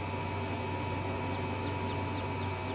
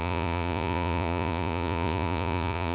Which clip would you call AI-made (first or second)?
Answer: second